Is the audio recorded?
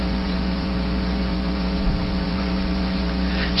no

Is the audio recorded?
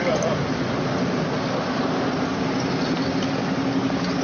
yes